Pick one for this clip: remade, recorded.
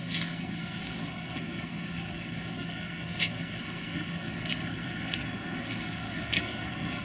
remade